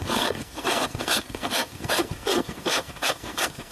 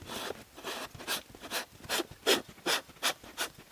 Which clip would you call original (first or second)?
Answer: second